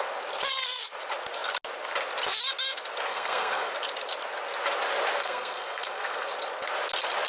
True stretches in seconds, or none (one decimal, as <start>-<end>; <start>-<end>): 0.0-3.1; 3.7-5.2; 6.3-7.3